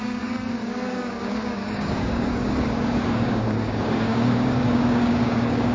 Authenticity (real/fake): fake